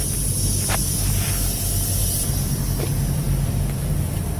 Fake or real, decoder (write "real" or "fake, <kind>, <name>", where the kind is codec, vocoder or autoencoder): real